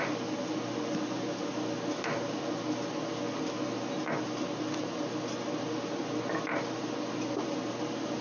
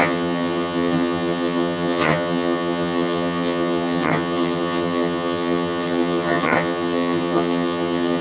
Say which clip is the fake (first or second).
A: second